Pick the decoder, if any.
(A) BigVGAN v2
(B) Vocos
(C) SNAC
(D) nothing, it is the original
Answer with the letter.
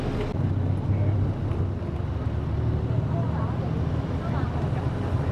D